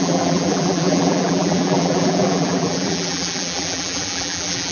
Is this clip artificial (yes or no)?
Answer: yes